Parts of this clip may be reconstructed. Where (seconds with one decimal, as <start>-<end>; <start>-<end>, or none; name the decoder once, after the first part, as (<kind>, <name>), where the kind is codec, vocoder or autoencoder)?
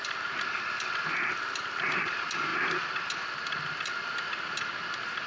none